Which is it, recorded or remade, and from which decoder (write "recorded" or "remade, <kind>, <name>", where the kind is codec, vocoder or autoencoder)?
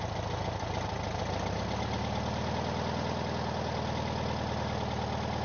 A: recorded